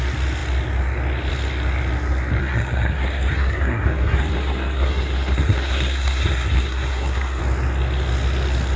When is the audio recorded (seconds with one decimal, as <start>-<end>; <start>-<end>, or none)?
0.0-2.4; 7.4-8.8